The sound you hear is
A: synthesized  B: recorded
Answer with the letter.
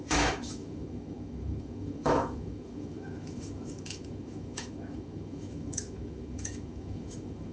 A